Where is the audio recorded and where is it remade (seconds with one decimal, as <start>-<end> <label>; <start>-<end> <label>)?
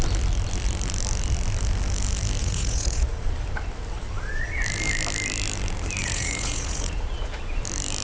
0.0-2.4 recorded; 2.4-3.2 remade; 3.2-6.0 recorded; 6.0-7.4 remade; 7.4-8.0 recorded